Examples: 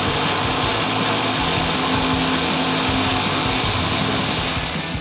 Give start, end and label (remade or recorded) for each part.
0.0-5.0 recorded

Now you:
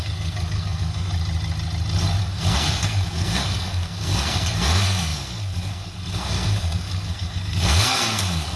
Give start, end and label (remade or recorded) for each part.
0.0-1.1 remade; 1.1-2.2 recorded; 2.2-8.6 remade